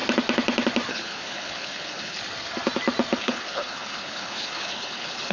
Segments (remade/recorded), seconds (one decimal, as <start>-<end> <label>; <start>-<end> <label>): 0.0-0.9 recorded; 0.9-2.2 remade; 2.2-3.2 recorded; 3.2-5.3 remade